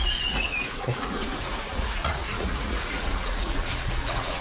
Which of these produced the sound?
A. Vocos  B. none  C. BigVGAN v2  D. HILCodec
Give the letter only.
A